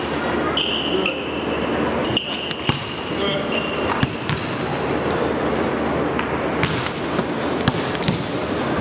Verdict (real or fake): real